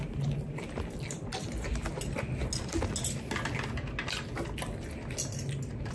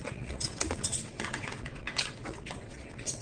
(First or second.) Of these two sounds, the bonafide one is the first